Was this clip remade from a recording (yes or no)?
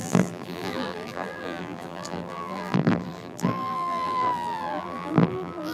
yes